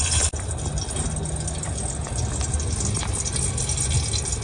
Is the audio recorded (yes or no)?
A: yes